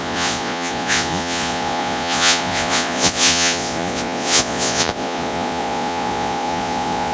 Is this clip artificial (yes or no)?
yes